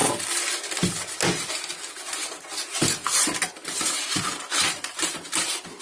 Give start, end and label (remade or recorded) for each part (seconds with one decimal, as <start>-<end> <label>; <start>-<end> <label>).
0.0-5.8 recorded